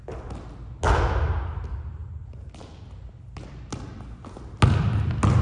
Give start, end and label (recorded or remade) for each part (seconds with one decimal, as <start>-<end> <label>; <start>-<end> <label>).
0.0-5.4 recorded